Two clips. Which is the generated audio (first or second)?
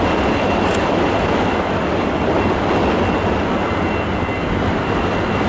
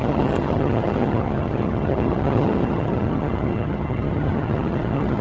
second